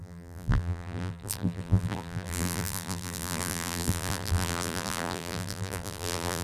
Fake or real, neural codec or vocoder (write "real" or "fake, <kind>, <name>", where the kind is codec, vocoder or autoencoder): fake, vocoder, BigVGAN v2